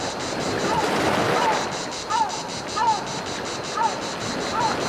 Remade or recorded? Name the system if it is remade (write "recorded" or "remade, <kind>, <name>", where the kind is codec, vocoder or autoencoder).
recorded